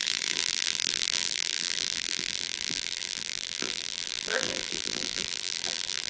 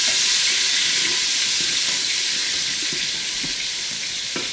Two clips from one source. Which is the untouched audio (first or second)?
second